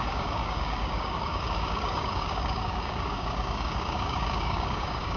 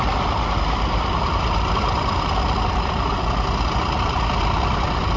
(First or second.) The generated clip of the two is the first